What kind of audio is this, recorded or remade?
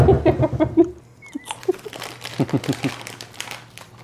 recorded